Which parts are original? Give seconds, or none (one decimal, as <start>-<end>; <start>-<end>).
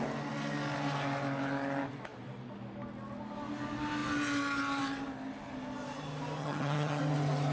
0.0-6.4; 7.0-7.5